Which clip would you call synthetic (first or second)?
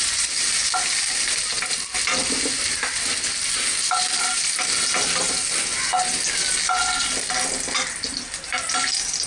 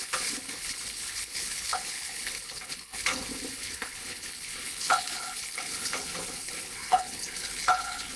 second